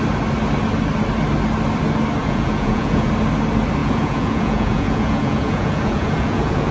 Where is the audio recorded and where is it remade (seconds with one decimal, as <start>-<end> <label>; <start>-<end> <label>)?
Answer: 0.0-2.2 recorded; 2.2-3.1 remade; 3.1-3.8 recorded; 3.8-6.7 remade